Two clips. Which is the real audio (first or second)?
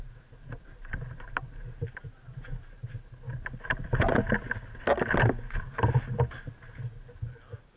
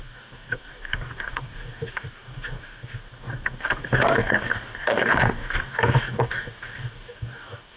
first